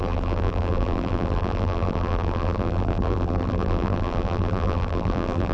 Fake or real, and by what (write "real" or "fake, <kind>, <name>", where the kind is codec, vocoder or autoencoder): fake, vocoder, BigVGAN v2